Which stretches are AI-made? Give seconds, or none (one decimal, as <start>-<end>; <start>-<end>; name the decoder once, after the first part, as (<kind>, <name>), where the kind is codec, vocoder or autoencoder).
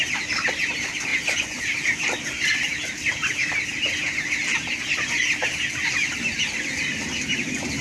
1.1-1.6 (vocoder, Vocos)